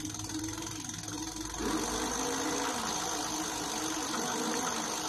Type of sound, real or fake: real